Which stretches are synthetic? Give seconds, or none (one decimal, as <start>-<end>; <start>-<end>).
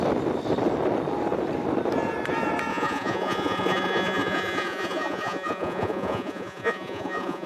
2.7-7.5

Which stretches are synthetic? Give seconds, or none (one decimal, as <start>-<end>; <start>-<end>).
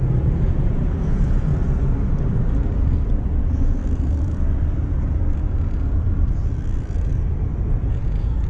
0.0-1.5; 3.4-3.8; 7.9-8.5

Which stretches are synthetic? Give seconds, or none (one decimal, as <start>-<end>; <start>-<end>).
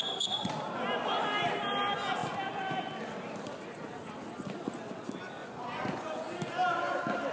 0.0-0.5; 5.4-6.3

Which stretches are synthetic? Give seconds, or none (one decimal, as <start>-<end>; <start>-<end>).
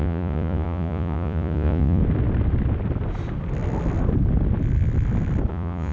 0.0-2.0; 5.5-5.9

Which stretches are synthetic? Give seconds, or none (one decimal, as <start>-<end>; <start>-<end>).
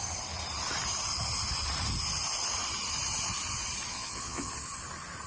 3.9-4.5